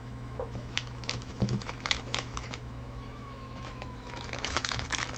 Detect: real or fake fake